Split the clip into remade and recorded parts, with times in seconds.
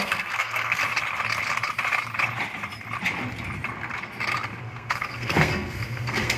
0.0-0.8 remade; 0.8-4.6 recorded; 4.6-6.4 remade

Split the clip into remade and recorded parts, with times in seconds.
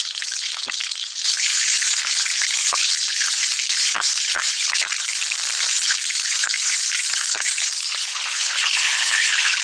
0.0-5.1 remade; 5.1-5.7 recorded; 5.7-9.6 remade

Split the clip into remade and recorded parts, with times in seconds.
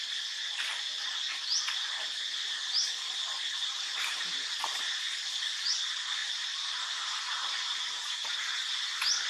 0.0-3.6 recorded; 3.6-5.1 remade; 5.1-6.2 recorded; 6.2-8.3 remade; 8.3-9.3 recorded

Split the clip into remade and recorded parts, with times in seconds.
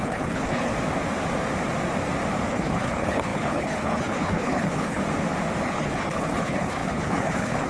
0.0-0.7 remade; 0.7-2.5 recorded; 2.5-5.0 remade; 5.0-5.6 recorded; 5.6-7.7 remade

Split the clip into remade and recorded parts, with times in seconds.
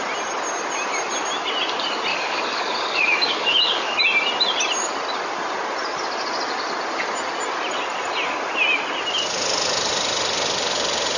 0.0-2.1 recorded; 2.1-4.0 remade; 4.0-11.2 recorded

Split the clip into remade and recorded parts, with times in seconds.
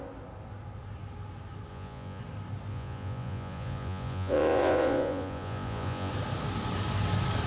0.0-1.7 recorded; 1.7-2.2 remade; 2.2-2.7 recorded; 2.7-6.1 remade; 6.1-7.5 recorded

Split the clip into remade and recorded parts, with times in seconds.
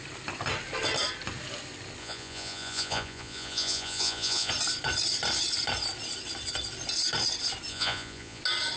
0.0-2.0 recorded; 2.0-4.5 remade; 4.5-7.7 recorded; 7.7-8.4 remade; 8.4-8.8 recorded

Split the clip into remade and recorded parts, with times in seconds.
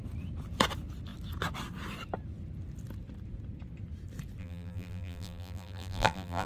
0.0-4.4 recorded; 4.4-6.5 remade